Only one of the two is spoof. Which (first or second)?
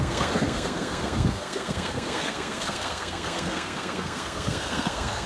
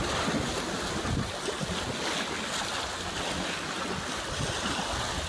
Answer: first